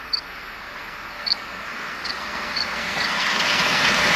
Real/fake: fake